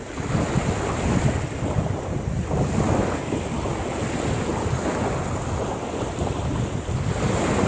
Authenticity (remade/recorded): recorded